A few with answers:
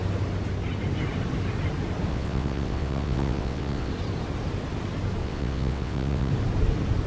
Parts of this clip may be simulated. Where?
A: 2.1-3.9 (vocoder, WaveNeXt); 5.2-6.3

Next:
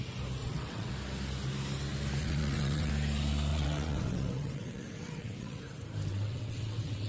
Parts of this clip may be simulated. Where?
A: 0.4-0.9 (vocoder, WaveNeXt); 2.2-2.9; 3.5-5.6; 6.1-7.1

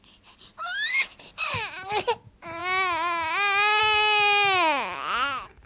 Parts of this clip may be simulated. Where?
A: none

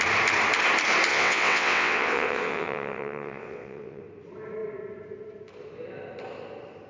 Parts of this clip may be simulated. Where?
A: 1.1-4.0 (vocoder, WaveNeXt)

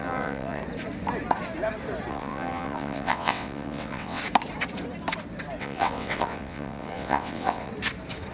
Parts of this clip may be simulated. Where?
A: 0.0-0.6 (vocoder, WaveNeXt); 2.1-4.2; 5.6-7.7

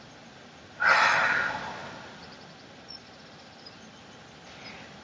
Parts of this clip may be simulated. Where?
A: none